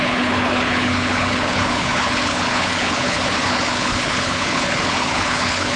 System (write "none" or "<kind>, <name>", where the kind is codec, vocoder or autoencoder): codec, HILCodec